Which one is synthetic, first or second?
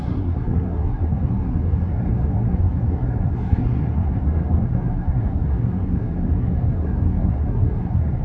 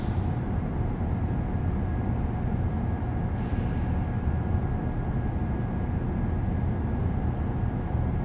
first